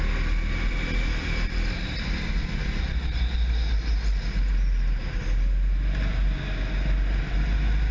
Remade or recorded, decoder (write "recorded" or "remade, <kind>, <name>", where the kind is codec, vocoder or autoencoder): recorded